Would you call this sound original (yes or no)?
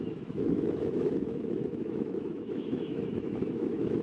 no